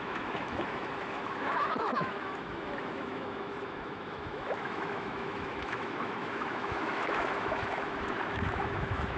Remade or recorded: remade